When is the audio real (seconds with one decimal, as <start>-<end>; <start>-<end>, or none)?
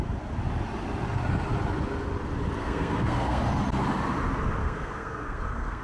0.0-2.6; 3.4-4.6